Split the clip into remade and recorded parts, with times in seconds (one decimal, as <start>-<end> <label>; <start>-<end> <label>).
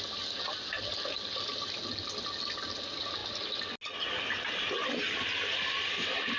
0.0-6.4 recorded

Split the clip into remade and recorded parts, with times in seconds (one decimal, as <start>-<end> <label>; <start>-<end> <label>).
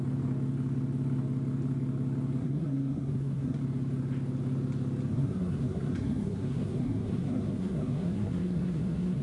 0.0-2.4 recorded; 2.4-3.6 remade; 3.6-5.1 recorded; 5.1-9.2 remade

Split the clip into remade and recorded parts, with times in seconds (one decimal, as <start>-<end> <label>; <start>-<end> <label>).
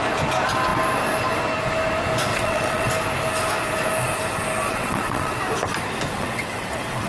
0.0-2.3 recorded; 2.3-2.9 remade; 2.9-4.7 recorded; 4.7-5.4 remade; 5.4-6.1 recorded; 6.1-7.1 remade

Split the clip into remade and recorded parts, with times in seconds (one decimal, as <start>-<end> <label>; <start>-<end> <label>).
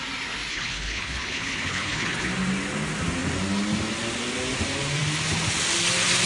0.0-0.5 recorded; 0.5-2.3 remade; 2.3-6.3 recorded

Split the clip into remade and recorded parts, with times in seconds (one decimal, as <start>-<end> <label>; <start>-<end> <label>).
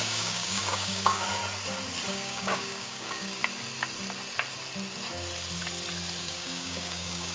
0.0-1.4 remade; 1.4-2.1 recorded; 2.1-3.4 remade; 3.4-6.2 recorded; 6.2-7.3 remade